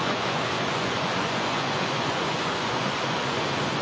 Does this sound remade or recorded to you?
remade